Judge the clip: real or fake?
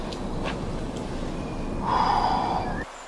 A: real